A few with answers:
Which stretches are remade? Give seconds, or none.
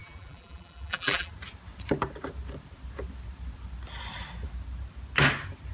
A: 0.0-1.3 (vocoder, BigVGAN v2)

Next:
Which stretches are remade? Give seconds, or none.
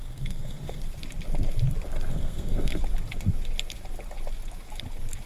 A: 0.0-0.8 (codec, SNAC); 2.1-2.8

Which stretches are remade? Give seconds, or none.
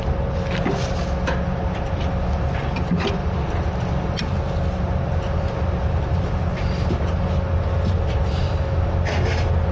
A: 3.2-4.2 (vocoder, BigVGAN v2)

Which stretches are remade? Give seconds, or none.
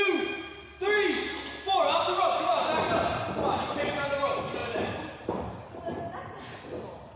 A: 0.0-0.5 (vocoder, BigVGAN v2); 2.5-7.2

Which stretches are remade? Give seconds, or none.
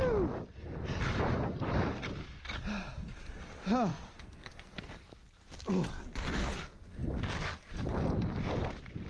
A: 3.9-4.9 (codec, SNAC)